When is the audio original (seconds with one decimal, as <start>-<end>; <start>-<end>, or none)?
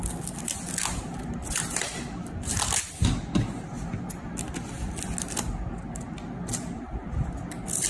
0.0-1.4; 2.0-7.9